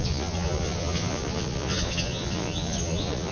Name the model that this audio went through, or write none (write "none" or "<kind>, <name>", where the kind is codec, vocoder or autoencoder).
vocoder, Vocos